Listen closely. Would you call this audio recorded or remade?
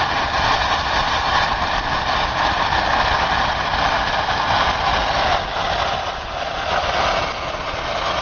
recorded